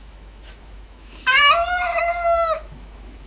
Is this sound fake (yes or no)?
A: yes